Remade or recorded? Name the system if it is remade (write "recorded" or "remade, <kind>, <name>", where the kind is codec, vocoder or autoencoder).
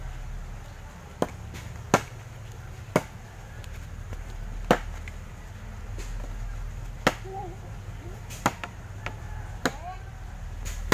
recorded